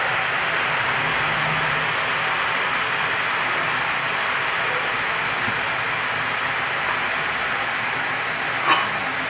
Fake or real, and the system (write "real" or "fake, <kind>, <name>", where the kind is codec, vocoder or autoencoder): real